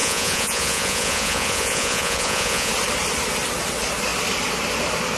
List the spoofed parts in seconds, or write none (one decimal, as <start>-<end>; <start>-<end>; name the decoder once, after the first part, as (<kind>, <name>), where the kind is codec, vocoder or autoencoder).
0.0-2.7 (vocoder, Vocos)